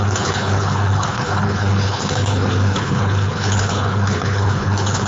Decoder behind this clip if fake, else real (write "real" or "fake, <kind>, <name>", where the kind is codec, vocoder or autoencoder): fake, codec, HILCodec